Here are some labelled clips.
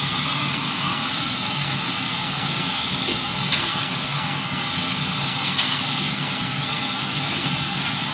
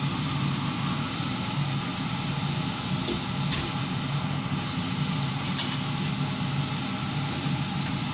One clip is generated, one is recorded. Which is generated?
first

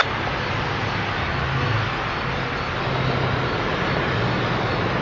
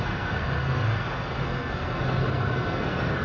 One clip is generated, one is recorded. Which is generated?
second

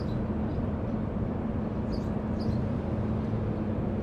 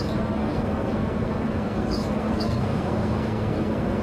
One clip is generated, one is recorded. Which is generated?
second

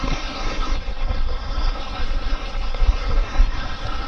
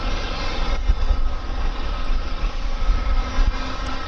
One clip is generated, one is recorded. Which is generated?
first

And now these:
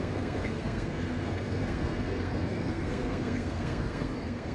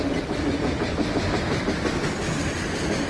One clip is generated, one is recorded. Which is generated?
first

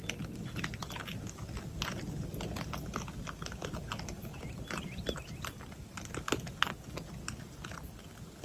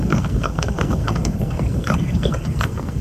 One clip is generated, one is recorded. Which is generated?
second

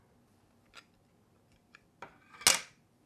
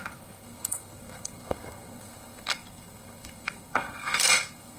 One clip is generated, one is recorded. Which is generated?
second